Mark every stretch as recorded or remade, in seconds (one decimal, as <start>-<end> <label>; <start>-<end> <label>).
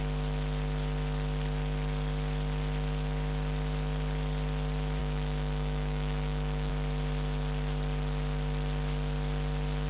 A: 0.0-5.0 recorded; 5.0-6.7 remade; 6.7-9.9 recorded